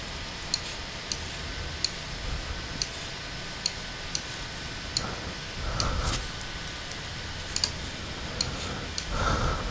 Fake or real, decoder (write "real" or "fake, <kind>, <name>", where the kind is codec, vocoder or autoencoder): real